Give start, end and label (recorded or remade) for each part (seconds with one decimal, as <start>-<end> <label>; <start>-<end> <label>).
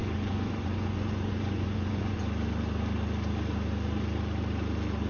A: 0.0-2.2 remade; 2.2-5.1 recorded